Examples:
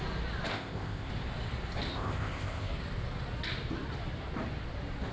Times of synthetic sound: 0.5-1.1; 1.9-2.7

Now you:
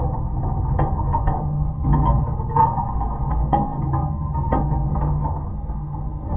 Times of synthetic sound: 1.2-5.0; 5.5-6.4

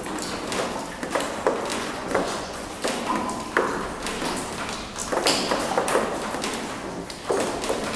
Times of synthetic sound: 1.7-2.7

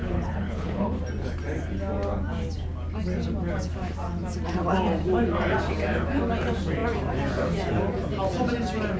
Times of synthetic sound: 0.0-1.0

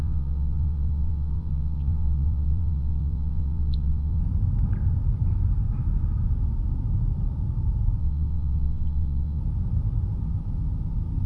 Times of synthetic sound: 0.0-4.2; 8.0-9.4

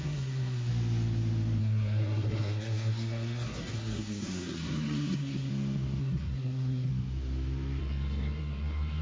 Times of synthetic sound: 0.0-0.7; 1.6-5.5; 6.0-6.9; 7.8-9.0

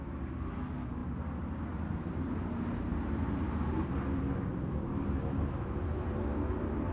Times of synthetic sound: 1.0-4.2

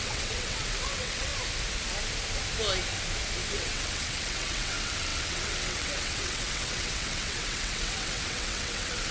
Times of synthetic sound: 0.0-1.3; 3.5-9.1